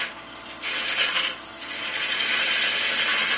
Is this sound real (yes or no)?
yes